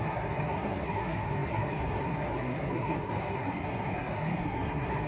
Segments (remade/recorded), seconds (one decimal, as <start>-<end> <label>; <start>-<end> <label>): 0.0-5.1 remade